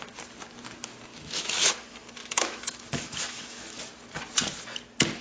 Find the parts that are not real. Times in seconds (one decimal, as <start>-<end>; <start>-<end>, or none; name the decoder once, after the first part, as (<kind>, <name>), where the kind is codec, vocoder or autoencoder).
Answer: 1.1-1.7 (autoencoder, DAC-VAE); 2.2-3.8